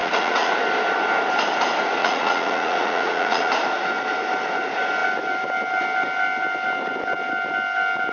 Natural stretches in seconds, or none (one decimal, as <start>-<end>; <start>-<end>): 0.5-2.0; 3.5-8.1